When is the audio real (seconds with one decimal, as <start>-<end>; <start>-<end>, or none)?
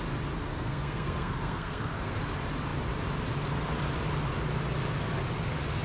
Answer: 0.0-0.5; 2.2-5.8